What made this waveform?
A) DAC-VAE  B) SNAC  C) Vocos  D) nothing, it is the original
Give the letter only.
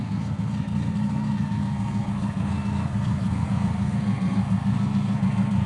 B